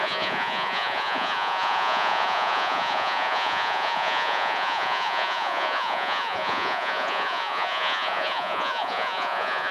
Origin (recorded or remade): remade